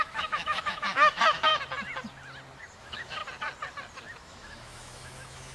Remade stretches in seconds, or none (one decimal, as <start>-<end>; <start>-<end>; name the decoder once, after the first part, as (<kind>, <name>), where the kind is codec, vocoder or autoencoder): 0.0-1.5 (autoencoder, DAC-VAE); 2.8-3.2; 4.2-5.5